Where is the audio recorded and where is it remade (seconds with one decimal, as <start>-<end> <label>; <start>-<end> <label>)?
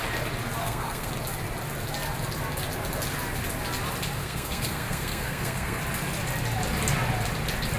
0.0-0.6 recorded; 0.6-1.1 remade; 1.1-4.2 recorded; 4.2-5.8 remade; 5.8-7.8 recorded